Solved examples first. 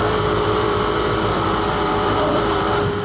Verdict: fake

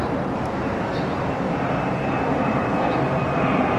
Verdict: fake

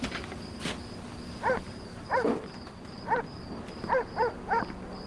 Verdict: real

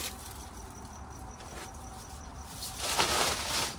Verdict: real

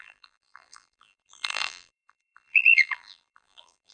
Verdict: fake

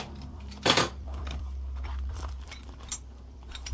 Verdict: fake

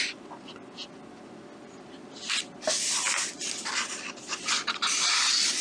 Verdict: real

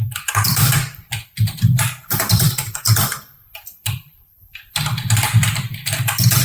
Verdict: fake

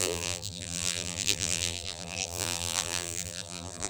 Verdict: fake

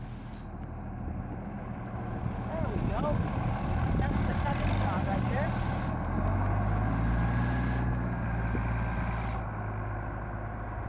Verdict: real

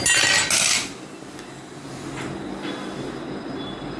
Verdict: real